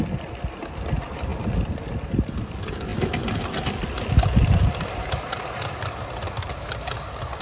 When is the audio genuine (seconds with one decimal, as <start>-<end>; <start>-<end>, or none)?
0.0-7.4